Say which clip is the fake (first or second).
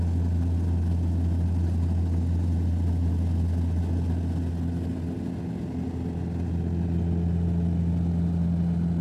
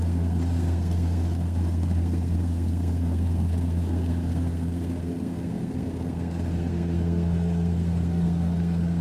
second